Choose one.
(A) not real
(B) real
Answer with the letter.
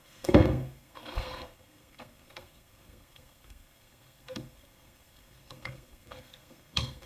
A